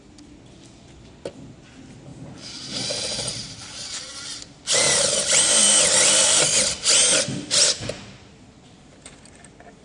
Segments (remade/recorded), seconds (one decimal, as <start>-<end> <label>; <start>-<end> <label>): 0.0-2.1 recorded; 2.1-2.7 remade; 2.7-5.6 recorded; 5.6-6.8 remade; 6.8-9.8 recorded